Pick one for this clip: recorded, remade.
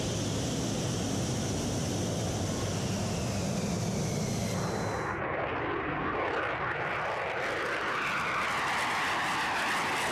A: recorded